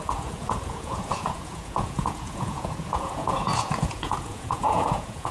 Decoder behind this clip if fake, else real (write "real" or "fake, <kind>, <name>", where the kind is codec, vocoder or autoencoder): fake, vocoder, Vocos